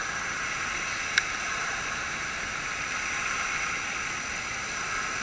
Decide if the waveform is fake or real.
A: real